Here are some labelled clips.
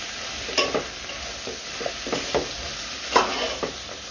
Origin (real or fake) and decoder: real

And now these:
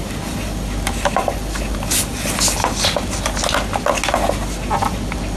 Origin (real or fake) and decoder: real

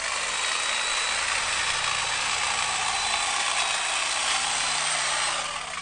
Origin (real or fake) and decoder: real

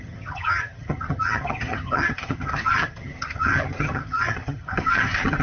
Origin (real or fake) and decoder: fake, vocoder, HiFi-GAN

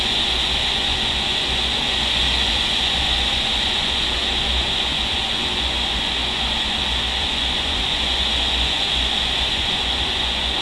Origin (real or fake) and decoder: fake, vocoder, Vocos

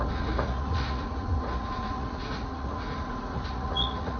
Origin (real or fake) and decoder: fake, vocoder, Vocos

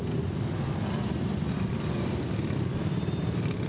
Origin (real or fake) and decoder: real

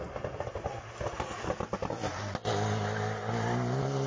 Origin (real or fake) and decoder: real